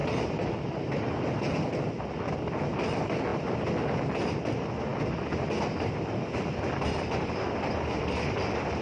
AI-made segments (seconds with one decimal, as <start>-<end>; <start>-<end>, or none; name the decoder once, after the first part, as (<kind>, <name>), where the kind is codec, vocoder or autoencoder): none